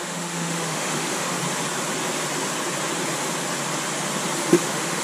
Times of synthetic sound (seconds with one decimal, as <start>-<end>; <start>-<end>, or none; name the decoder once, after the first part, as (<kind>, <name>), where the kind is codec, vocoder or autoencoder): 0.0-1.4 (autoencoder, DAC-VAE); 4.4-5.0